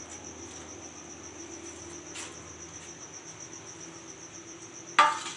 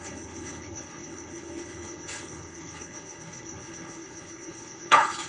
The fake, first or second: second